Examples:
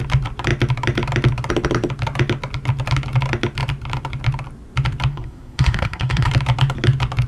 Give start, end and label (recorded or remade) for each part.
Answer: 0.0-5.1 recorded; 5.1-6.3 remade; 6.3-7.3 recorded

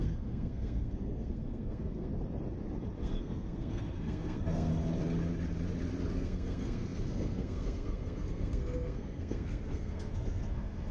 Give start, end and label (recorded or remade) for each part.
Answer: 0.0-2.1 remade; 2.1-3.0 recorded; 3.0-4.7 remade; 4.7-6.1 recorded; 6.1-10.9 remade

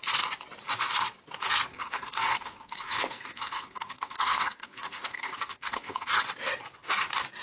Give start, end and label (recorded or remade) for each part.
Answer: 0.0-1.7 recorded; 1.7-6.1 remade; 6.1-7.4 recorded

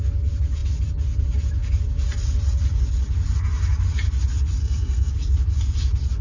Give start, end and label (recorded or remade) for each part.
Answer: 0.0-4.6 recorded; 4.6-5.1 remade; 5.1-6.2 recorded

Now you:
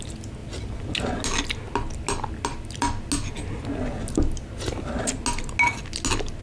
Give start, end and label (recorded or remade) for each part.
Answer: 0.0-6.4 recorded

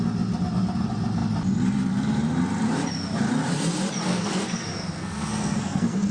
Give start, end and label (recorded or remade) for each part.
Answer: 0.0-4.1 recorded; 4.1-6.1 remade

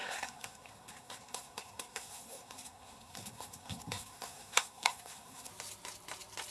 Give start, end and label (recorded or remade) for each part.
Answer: 0.0-5.5 remade; 5.5-6.5 recorded

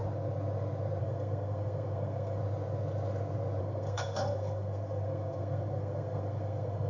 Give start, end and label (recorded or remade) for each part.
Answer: 0.0-1.0 recorded; 1.0-2.4 remade; 2.4-3.6 recorded; 3.6-6.9 remade